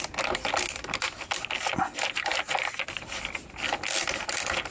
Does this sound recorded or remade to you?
recorded